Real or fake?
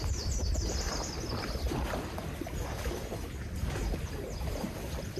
real